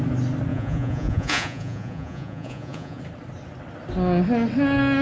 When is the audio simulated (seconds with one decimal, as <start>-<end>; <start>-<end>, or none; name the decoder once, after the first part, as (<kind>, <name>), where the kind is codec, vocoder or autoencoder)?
0.5-3.0 (vocoder, Vocos)